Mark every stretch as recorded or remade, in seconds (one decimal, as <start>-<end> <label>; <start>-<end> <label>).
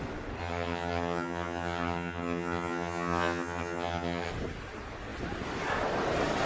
0.0-0.4 recorded; 0.4-4.3 remade; 4.3-6.5 recorded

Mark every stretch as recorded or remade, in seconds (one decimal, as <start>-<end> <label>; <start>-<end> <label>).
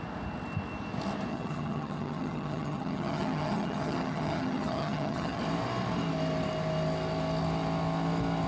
0.0-1.3 recorded; 1.3-5.4 remade; 5.4-8.5 recorded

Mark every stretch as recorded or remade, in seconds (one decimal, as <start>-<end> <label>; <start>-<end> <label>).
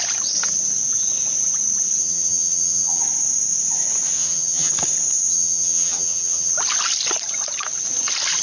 0.0-2.0 recorded; 2.0-3.0 remade; 3.0-4.2 recorded; 4.2-4.7 remade; 4.7-5.3 recorded; 5.3-6.5 remade; 6.5-8.4 recorded